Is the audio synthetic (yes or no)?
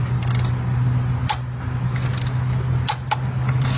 no